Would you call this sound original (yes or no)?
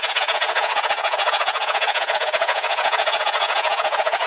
no